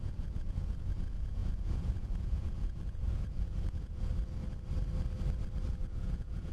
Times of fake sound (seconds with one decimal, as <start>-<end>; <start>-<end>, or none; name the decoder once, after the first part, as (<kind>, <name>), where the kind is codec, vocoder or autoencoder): 0.0-4.1 (vocoder, Vocos); 5.7-6.5